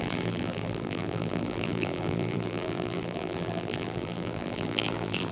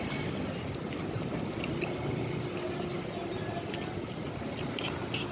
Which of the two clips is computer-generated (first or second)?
first